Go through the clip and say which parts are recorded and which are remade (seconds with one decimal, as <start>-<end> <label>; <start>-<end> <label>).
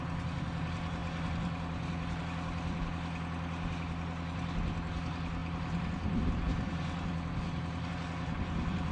0.0-8.9 recorded